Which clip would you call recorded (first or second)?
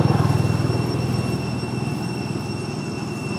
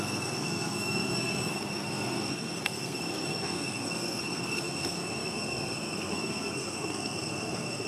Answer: first